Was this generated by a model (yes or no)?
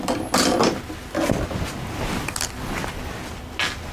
no